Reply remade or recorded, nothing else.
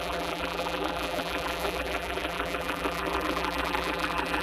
remade